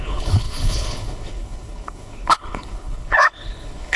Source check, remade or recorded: remade